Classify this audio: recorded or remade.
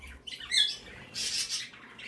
recorded